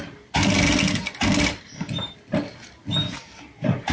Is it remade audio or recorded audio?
recorded